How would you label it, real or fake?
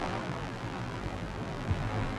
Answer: fake